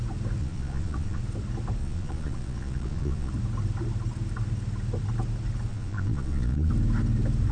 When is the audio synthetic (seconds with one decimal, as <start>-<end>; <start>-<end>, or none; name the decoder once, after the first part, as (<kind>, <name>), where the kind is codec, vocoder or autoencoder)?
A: 0.4-1.2 (vocoder, Vocos); 1.8-3.3; 5.7-6.7